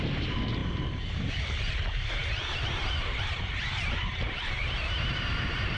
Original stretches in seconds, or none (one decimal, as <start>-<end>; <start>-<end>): none

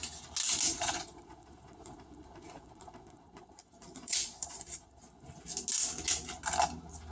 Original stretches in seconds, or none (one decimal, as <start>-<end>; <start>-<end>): 0.0-0.7; 5.0-7.1

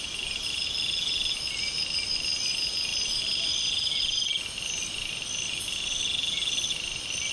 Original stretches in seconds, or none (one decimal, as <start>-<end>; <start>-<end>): 0.0-7.3

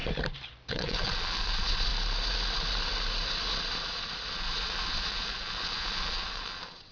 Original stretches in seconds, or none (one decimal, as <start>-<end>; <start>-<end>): 0.0-0.7; 1.9-4.3

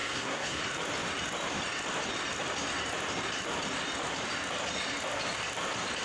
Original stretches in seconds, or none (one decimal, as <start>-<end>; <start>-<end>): 0.6-6.0

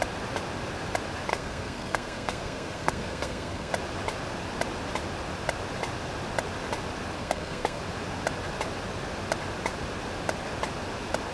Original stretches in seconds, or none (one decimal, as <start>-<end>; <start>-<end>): 0.0-1.3; 3.7-7.2; 7.8-11.3

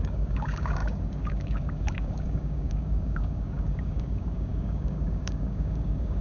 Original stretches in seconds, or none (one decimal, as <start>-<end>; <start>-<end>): none